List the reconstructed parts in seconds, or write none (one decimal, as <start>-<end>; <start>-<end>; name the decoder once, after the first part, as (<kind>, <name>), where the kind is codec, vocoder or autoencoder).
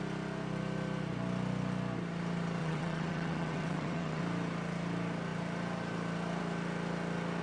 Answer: 2.6-4.2 (vocoder, WaveNeXt)